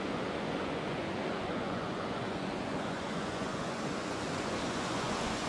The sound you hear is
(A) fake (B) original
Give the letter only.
A